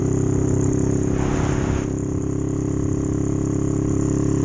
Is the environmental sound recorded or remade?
recorded